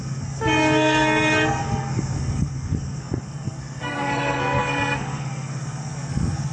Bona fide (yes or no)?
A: no